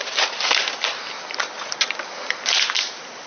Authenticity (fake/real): fake